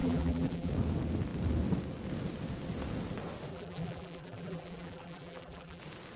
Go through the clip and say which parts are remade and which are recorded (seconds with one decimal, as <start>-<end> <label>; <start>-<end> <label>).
0.0-0.7 remade; 0.7-3.5 recorded; 3.5-5.8 remade; 5.8-6.2 recorded